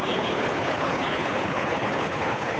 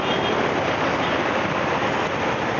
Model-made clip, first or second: first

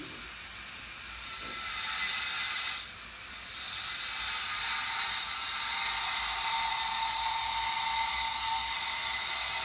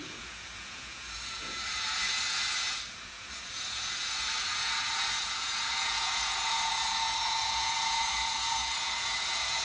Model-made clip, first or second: second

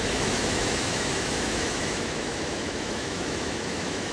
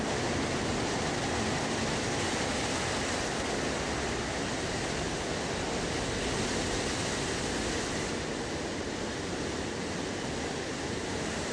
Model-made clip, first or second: first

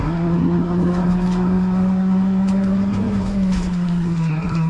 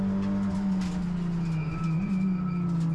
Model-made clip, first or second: first